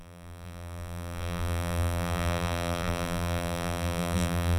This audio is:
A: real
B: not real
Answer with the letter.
B